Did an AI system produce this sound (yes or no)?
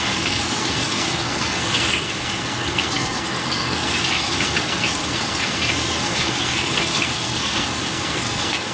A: yes